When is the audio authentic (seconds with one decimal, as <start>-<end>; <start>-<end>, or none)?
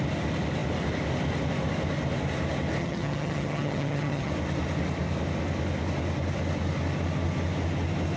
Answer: 0.0-2.8; 4.3-8.2